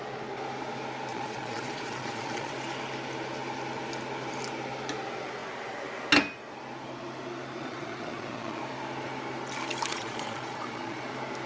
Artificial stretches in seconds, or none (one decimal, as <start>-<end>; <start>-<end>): 1.1-2.5; 7.6-8.6; 9.9-11.1